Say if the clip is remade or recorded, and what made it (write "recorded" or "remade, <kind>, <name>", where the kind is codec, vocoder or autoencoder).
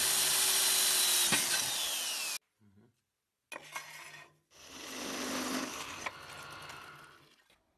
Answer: recorded